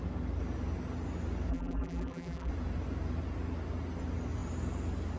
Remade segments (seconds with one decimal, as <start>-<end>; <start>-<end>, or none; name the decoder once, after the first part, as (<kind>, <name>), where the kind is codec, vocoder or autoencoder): 1.5-2.5 (vocoder, BigVGAN v2)